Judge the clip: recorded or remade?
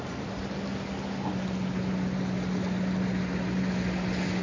recorded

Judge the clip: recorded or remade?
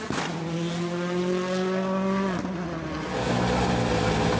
recorded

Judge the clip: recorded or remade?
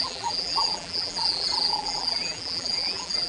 remade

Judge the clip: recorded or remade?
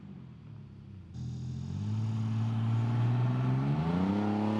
recorded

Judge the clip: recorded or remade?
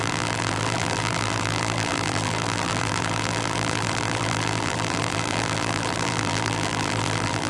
remade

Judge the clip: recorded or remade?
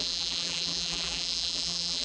remade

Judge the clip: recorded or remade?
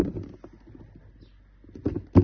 recorded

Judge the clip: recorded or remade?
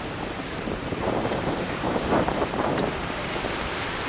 remade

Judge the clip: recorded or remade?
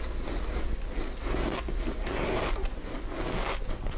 recorded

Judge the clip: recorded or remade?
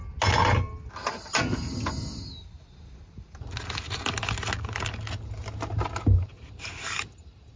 recorded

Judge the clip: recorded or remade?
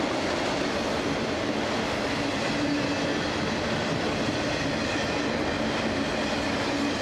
recorded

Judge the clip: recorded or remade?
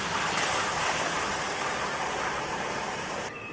recorded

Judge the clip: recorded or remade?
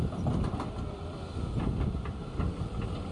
remade